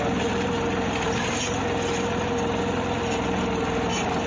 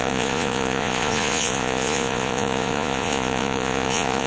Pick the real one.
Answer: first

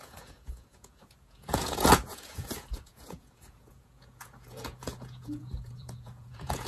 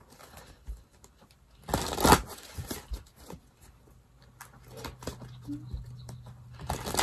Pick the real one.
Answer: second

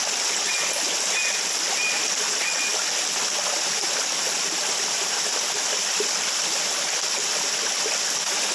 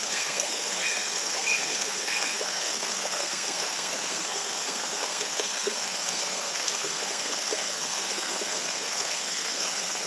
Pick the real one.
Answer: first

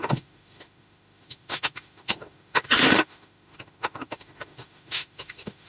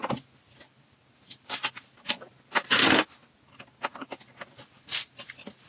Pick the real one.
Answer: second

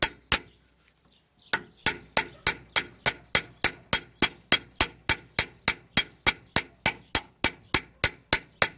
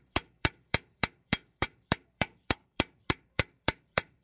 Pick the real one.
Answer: first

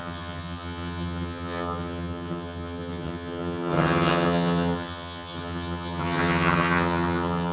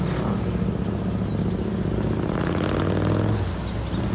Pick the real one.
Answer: second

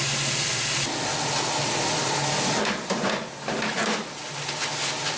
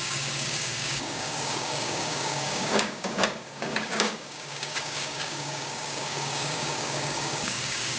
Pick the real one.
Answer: first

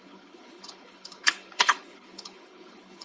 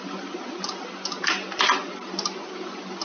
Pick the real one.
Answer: second